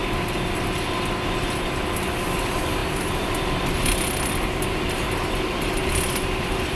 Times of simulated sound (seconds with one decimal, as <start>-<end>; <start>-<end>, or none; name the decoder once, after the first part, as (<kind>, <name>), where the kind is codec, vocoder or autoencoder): none